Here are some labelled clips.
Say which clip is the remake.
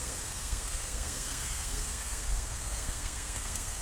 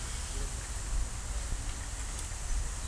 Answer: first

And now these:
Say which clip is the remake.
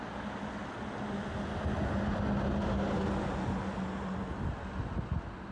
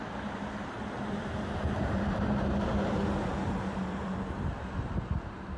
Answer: second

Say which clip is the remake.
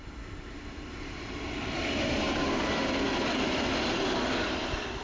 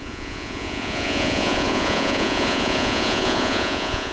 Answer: second